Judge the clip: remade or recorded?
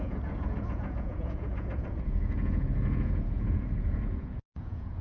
remade